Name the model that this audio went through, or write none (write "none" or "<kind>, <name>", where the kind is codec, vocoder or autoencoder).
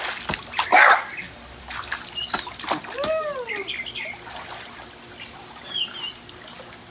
none